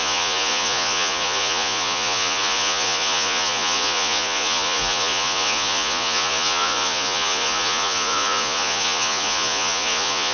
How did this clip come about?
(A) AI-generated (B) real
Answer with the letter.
A